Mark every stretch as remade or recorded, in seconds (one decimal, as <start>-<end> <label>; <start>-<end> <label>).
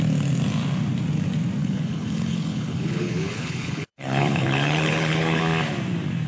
0.0-1.6 recorded; 1.6-5.4 remade; 5.4-6.3 recorded